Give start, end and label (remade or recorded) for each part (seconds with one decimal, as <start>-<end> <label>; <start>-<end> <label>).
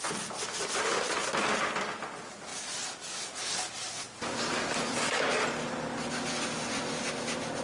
0.0-7.6 recorded